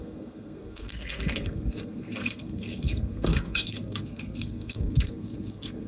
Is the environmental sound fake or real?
fake